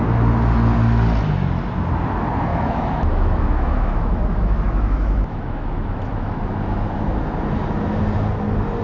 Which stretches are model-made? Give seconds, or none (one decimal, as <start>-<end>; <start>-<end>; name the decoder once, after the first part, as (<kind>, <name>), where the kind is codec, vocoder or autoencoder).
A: 2.5-6.4 (autoencoder, DAC-VAE)